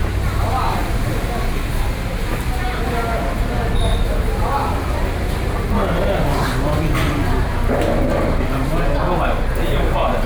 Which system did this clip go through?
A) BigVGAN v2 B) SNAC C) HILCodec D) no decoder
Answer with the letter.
D